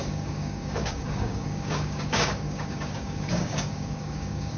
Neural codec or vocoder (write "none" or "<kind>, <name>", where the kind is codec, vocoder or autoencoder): codec, DAC